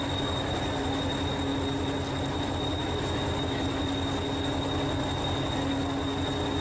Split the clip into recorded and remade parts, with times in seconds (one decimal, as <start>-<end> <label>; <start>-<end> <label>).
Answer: 0.0-6.6 recorded